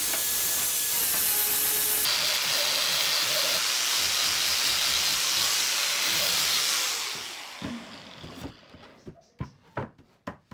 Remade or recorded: recorded